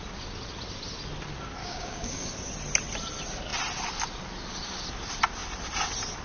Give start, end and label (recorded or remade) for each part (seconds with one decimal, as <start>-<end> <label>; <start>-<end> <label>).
0.0-1.6 recorded; 1.6-2.3 remade; 2.3-6.2 recorded